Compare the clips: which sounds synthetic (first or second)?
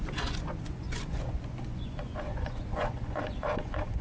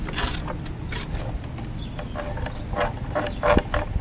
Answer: first